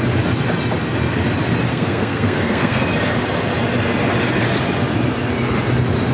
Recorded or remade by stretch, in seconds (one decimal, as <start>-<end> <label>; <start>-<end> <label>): 0.0-1.7 recorded; 1.7-2.8 remade; 2.8-6.1 recorded